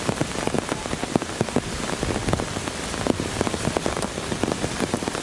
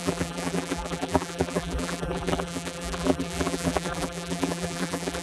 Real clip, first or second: first